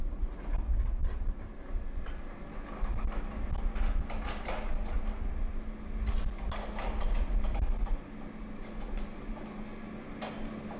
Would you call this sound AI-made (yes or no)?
no